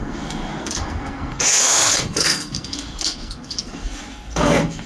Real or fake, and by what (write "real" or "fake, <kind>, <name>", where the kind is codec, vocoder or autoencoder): fake, codec, SNAC